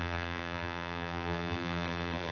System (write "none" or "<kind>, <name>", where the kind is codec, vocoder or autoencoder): vocoder, BigVGAN v2